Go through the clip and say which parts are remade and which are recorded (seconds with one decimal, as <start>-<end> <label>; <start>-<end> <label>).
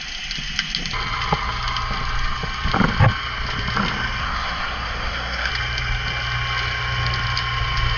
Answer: 0.0-4.2 recorded; 4.2-5.5 remade; 5.5-8.0 recorded